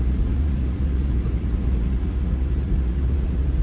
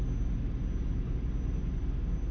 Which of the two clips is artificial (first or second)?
first